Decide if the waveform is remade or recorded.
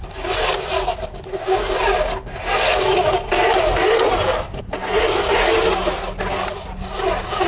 recorded